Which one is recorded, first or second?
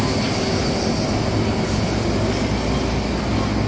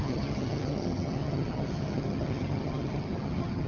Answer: first